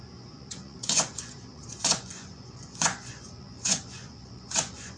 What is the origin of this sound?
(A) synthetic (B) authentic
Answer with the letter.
A